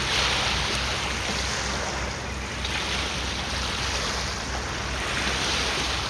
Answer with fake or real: real